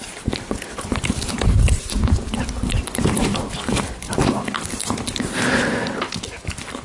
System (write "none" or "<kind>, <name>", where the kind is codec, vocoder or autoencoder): none